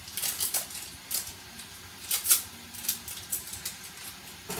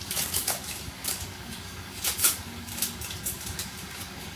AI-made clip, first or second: second